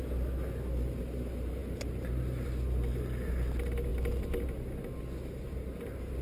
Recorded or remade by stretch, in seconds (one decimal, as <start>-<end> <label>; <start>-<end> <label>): 0.0-6.2 recorded